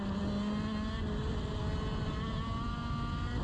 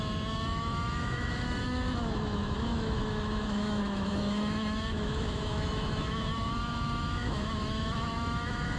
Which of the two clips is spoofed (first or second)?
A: second